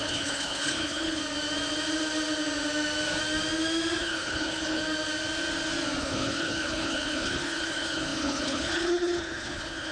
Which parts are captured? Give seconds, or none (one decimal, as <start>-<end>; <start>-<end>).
1.2-4.0; 4.8-6.0